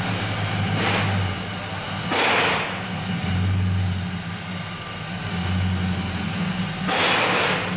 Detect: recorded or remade recorded